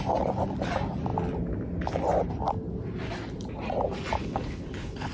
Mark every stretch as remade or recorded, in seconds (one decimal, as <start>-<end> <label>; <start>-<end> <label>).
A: 0.0-4.2 recorded; 4.2-5.1 remade